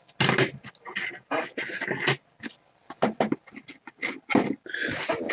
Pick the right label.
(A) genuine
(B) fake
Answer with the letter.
A